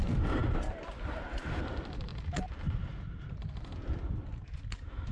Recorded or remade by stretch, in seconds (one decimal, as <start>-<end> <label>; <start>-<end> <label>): 0.0-2.1 recorded; 2.1-3.5 remade; 3.5-5.1 recorded